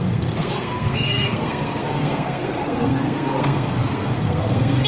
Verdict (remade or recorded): remade